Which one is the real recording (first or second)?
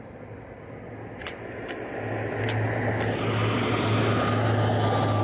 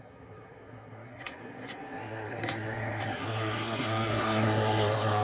first